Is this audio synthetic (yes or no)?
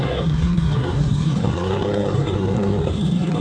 yes